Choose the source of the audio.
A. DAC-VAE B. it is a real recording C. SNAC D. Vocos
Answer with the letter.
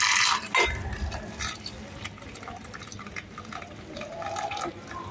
B